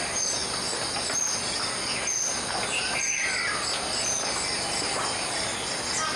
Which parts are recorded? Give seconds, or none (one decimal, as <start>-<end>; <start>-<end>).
0.0-6.2